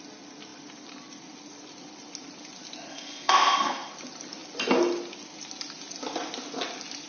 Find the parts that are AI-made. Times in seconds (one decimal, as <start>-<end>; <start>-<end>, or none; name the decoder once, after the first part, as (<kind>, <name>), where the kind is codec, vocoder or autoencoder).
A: 2.9-3.9 (codec, SNAC)